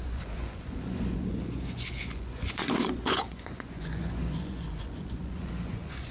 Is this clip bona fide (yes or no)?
no